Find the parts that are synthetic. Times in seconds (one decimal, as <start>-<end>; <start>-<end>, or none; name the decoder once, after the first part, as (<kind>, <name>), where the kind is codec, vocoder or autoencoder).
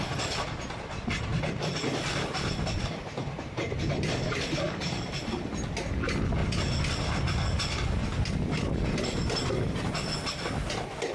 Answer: 1.3-5.4 (vocoder, BigVGAN v2)